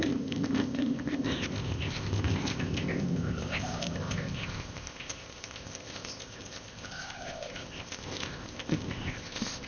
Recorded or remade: remade